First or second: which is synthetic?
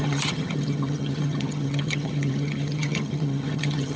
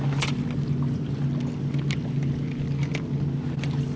first